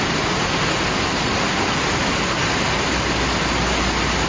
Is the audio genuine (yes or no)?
yes